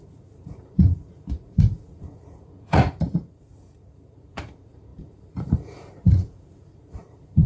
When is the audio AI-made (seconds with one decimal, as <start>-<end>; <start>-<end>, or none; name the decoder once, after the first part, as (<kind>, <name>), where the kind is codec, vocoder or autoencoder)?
0.0-7.5 (vocoder, Vocos)